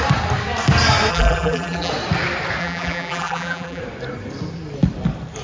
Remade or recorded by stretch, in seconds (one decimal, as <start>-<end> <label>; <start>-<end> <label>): 0.0-1.1 recorded; 1.1-1.9 remade; 1.9-2.6 recorded; 2.6-3.8 remade; 3.8-5.4 recorded